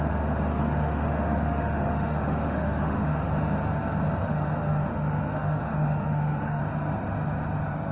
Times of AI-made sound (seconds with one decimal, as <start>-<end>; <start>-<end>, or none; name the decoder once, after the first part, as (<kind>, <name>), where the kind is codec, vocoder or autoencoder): 0.5-3.3 (autoencoder, DAC-VAE); 4.2-6.6